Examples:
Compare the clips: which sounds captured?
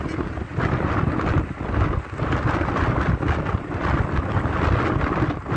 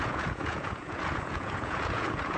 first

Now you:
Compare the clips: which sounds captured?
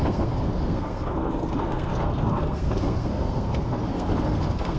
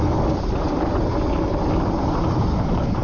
second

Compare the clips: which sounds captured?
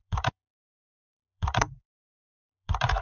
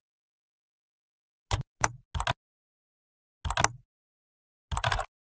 second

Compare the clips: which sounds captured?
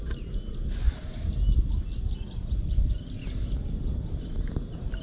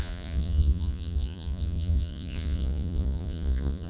first